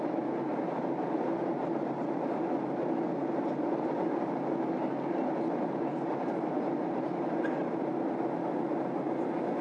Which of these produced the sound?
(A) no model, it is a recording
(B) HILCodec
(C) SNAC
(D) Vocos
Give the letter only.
A